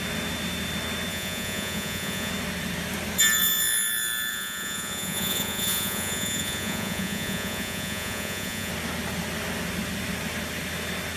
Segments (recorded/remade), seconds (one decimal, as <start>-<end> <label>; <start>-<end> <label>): 0.0-1.1 recorded; 1.1-2.3 remade; 2.3-4.3 recorded; 4.3-8.7 remade; 8.7-11.2 recorded